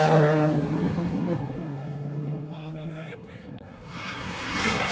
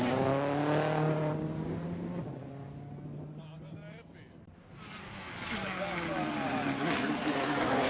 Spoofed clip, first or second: first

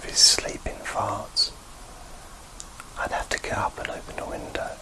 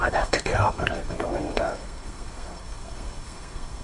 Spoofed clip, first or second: second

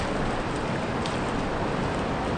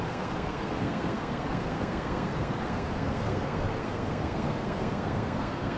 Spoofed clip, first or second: second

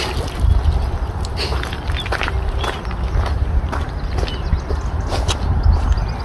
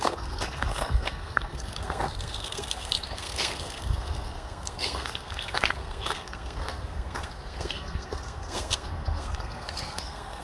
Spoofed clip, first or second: second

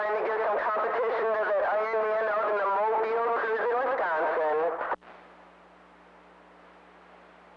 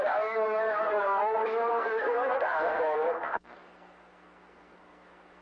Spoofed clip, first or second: second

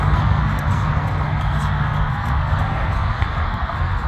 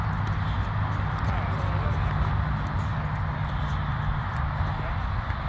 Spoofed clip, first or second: first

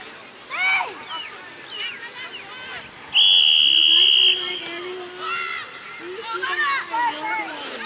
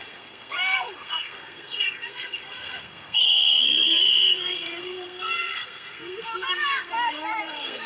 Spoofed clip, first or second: second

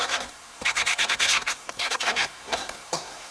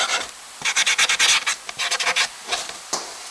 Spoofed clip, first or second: first